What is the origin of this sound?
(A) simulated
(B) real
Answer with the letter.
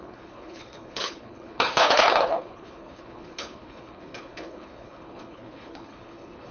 A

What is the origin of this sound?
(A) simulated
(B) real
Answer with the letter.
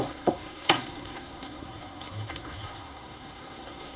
A